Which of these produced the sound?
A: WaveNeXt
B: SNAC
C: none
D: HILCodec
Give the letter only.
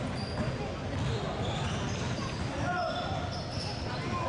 C